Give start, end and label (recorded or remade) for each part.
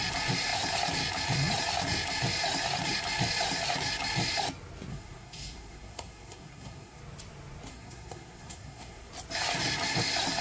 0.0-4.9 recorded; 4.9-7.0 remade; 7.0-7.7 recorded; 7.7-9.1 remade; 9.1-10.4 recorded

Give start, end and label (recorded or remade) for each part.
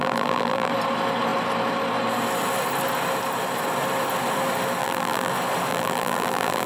0.0-0.7 remade; 0.7-4.8 recorded; 4.8-5.3 remade; 5.3-5.7 recorded; 5.7-6.7 remade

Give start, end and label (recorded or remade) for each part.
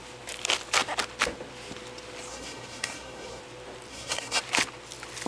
0.0-2.3 recorded; 2.3-3.4 remade; 3.4-3.9 recorded; 3.9-4.4 remade; 4.4-5.3 recorded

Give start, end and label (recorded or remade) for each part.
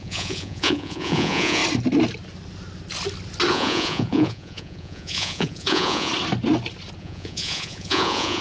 0.0-1.6 remade; 1.6-3.5 recorded; 3.5-6.1 remade; 6.1-7.0 recorded; 7.0-8.4 remade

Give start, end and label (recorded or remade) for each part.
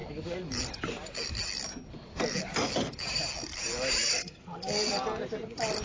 0.0-4.1 recorded; 4.1-4.9 remade; 4.9-5.8 recorded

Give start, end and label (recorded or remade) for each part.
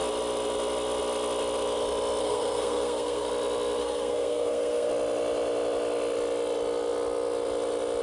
0.0-2.2 recorded; 2.2-3.3 remade; 3.3-3.8 recorded; 3.8-4.9 remade; 4.9-8.0 recorded